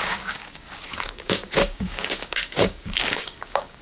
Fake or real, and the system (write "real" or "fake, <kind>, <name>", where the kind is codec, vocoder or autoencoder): fake, codec, DAC